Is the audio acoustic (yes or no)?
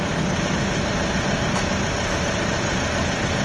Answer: yes